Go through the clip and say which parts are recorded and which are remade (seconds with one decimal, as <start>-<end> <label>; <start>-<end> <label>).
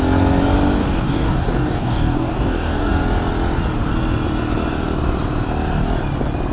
0.0-0.8 recorded; 0.8-2.9 remade; 2.9-6.5 recorded